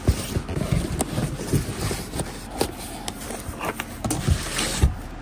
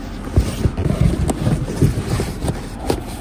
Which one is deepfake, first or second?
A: second